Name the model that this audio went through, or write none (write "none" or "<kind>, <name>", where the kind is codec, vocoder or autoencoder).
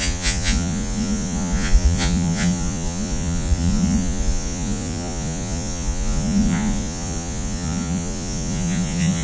vocoder, Vocos